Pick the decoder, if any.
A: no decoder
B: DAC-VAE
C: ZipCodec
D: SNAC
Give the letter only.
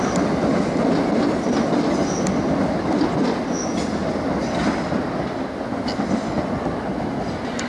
A